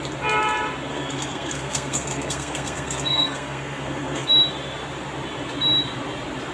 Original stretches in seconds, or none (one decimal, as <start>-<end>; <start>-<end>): 0.0-0.9; 4.3-6.5